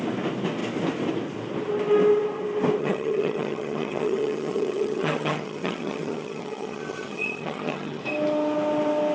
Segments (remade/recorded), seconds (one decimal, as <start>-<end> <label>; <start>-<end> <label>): 0.0-2.8 recorded; 2.8-8.0 remade; 8.0-9.1 recorded